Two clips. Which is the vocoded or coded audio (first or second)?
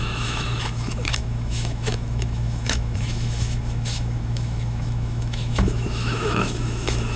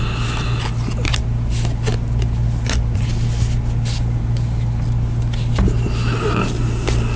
first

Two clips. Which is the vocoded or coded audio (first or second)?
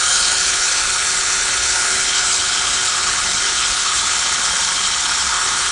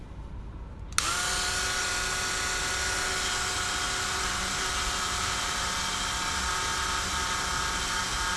first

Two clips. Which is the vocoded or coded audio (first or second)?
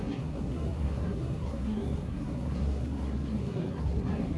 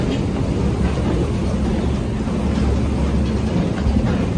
first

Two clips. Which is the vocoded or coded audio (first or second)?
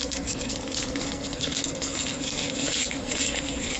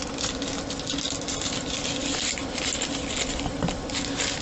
first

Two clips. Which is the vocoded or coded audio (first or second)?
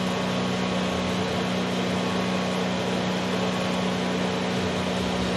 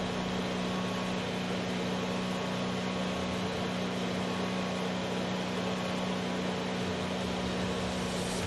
second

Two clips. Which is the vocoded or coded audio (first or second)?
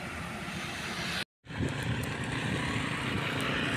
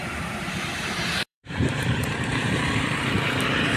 second